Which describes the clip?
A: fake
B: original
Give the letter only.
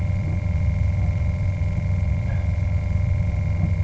B